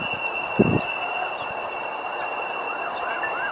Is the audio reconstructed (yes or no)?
no